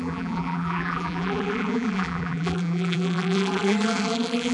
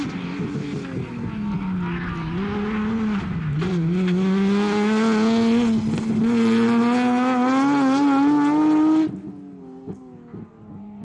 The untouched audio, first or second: second